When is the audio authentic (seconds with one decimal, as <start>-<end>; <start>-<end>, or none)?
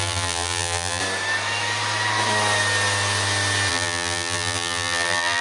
1.0-3.7